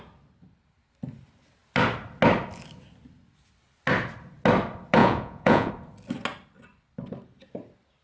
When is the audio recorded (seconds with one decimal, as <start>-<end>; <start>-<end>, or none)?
0.0-5.0; 5.7-8.0